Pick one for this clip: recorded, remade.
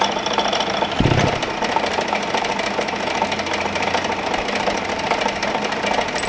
recorded